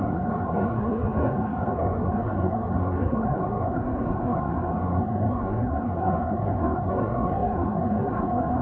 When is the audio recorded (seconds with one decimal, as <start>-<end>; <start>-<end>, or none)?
none